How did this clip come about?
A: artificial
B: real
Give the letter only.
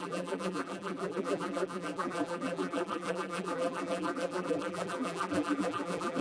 A